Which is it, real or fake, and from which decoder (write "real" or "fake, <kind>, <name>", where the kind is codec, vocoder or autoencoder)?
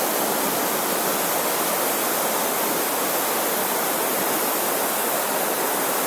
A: real